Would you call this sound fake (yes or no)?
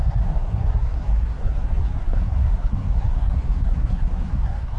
yes